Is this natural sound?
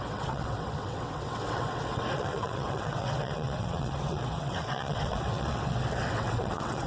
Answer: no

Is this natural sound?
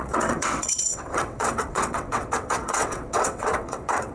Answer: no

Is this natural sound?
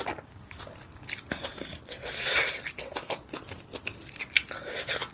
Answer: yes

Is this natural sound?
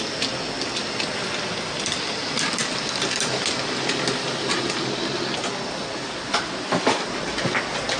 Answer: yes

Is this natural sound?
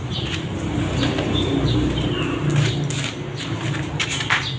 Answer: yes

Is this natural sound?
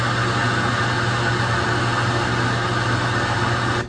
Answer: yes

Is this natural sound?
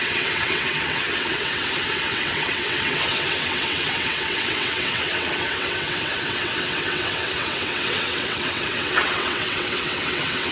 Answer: no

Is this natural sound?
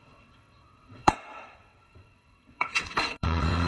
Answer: no